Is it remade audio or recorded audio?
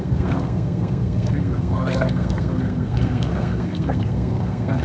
remade